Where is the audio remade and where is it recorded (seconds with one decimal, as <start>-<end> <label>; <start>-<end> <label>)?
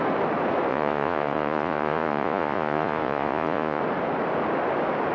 0.0-0.7 recorded; 0.7-3.8 remade; 3.8-5.1 recorded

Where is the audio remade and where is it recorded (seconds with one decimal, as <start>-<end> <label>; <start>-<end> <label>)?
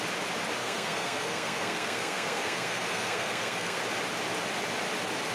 0.0-0.6 recorded; 0.6-3.8 remade; 3.8-5.3 recorded